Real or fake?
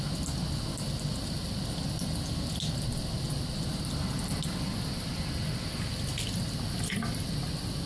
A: real